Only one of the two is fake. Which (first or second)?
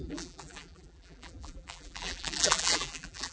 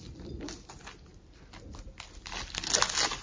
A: first